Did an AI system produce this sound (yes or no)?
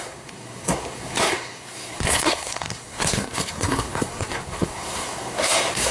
yes